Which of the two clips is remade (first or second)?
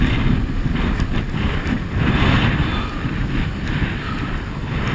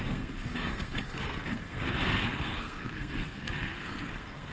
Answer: second